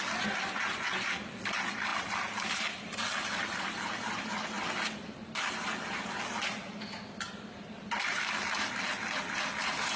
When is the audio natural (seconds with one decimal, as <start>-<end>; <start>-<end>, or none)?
0.0-10.0